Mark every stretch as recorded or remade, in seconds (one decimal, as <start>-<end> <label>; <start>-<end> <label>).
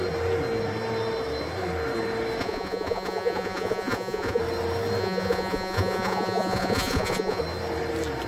0.0-2.4 recorded; 2.4-4.4 remade; 4.4-5.0 recorded; 5.0-7.4 remade; 7.4-8.3 recorded